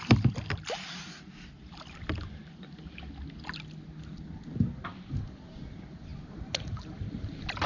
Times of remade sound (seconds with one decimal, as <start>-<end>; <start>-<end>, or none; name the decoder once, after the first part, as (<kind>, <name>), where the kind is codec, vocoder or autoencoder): none